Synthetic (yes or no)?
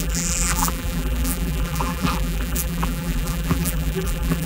yes